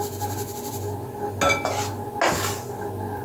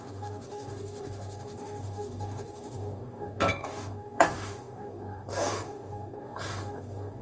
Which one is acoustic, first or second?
first